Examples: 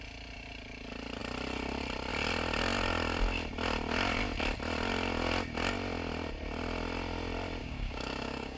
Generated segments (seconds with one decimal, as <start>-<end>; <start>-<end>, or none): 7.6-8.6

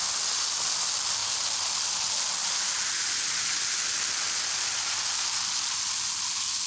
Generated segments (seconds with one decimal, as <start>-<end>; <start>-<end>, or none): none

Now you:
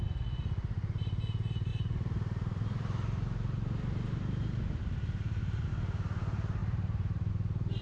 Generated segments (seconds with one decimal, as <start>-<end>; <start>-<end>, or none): 1.7-5.7; 6.6-7.3

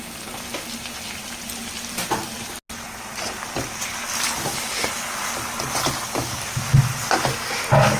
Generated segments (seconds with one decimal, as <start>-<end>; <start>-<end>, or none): none